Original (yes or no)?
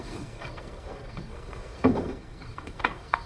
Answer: no